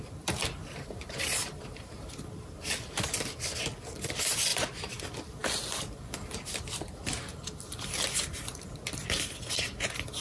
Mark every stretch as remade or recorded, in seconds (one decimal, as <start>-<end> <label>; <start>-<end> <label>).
0.0-0.6 recorded; 0.6-2.1 remade; 2.1-4.5 recorded; 4.5-5.0 remade; 5.0-10.2 recorded